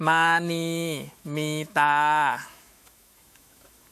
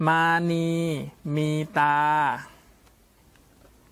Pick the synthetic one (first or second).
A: first